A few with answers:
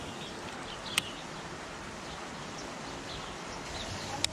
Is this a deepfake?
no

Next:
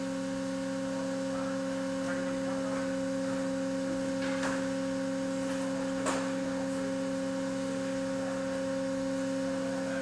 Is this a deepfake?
no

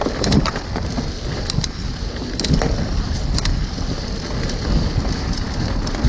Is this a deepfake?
no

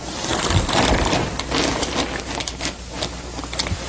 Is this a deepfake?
no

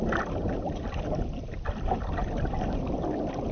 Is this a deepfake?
no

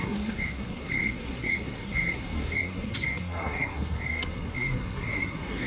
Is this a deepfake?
yes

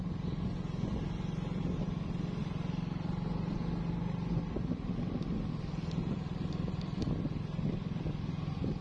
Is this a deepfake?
no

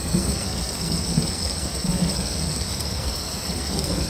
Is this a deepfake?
yes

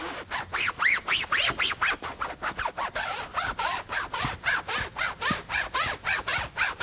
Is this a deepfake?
no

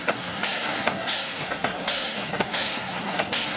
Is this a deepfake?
yes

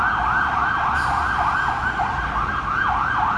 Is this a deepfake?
no